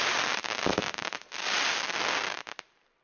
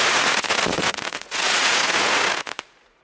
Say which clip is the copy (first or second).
second